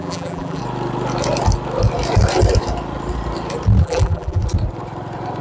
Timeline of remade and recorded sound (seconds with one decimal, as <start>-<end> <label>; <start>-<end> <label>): 0.0-0.6 remade; 0.6-3.8 recorded; 3.8-4.4 remade; 4.4-5.4 recorded